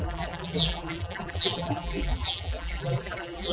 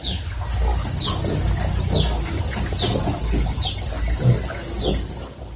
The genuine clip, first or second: second